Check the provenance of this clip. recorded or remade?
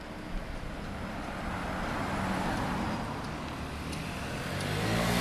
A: recorded